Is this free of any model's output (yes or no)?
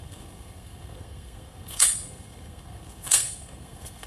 no